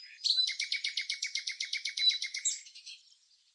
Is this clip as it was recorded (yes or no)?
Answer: no